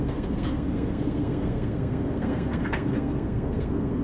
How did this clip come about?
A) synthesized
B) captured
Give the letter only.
A